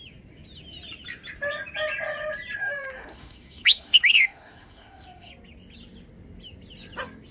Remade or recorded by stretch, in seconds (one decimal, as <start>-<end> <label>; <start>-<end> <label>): 0.0-2.6 recorded; 2.6-5.3 remade; 5.3-7.3 recorded